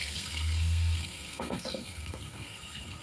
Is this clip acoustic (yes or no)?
no